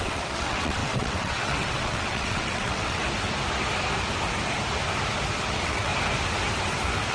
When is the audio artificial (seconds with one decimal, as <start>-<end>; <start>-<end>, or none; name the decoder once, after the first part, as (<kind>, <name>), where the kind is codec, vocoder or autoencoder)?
0.0-3.0 (vocoder, WaveNeXt); 5.5-5.9